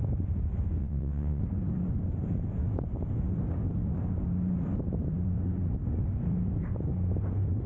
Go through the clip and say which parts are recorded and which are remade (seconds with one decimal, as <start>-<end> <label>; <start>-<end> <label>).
0.0-0.8 recorded; 0.8-1.4 remade; 1.4-7.7 recorded